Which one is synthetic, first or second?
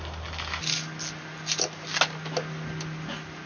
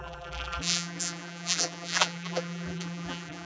second